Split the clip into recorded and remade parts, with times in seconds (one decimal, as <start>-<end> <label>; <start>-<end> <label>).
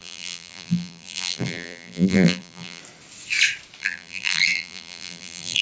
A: 0.0-2.8 remade; 2.8-3.8 recorded; 3.8-5.6 remade